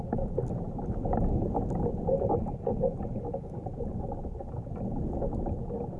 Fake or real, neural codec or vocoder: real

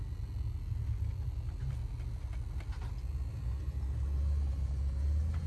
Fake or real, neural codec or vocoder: real